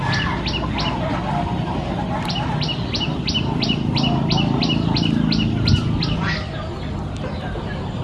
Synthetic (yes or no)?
no